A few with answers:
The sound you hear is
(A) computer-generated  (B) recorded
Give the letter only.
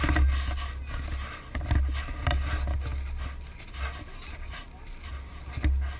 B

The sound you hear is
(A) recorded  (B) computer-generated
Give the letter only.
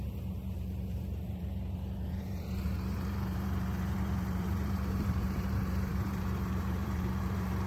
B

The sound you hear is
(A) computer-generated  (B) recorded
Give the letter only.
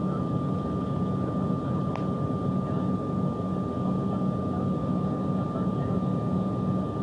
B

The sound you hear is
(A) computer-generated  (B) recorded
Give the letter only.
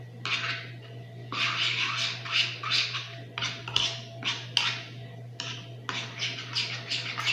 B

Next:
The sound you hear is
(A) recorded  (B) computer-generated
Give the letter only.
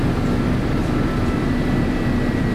B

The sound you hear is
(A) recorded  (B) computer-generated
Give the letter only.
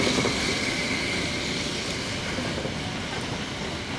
A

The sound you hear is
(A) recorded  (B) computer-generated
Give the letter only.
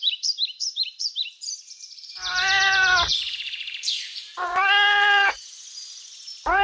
B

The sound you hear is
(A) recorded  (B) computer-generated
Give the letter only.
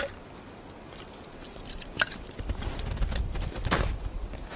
A